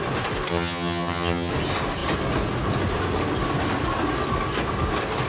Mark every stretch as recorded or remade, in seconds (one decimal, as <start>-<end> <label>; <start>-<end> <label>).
0.0-0.5 recorded; 0.5-1.5 remade; 1.5-5.3 recorded